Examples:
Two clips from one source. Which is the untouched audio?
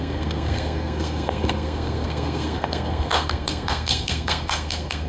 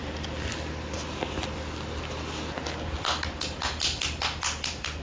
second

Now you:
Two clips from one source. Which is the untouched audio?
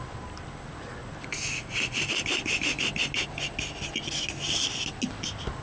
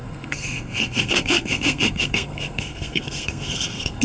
first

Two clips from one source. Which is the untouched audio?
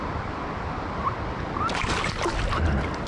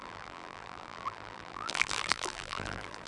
first